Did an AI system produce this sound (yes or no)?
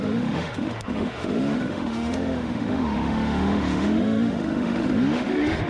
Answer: yes